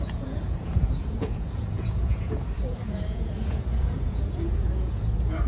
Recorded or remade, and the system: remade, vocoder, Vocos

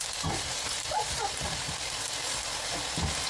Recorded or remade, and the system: recorded